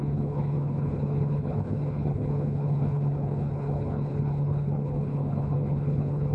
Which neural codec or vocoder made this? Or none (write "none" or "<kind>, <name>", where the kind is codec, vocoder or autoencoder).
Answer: codec, HILCodec